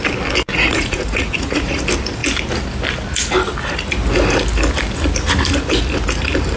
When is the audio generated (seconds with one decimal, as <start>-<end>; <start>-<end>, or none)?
0.5-1.8